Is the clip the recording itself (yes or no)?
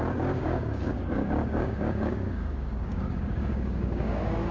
no